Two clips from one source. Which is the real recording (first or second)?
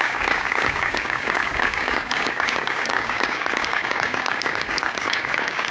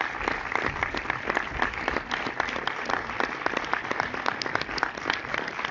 second